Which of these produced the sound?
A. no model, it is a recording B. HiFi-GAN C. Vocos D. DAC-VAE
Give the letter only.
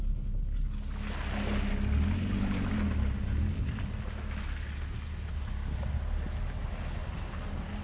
A